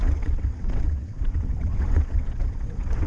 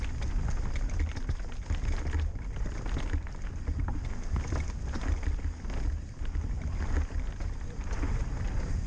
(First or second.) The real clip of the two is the second